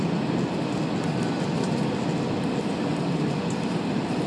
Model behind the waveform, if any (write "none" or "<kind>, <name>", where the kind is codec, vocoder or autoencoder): none